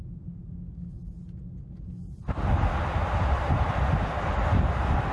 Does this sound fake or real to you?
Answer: real